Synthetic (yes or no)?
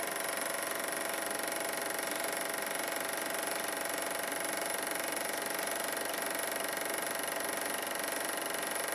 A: no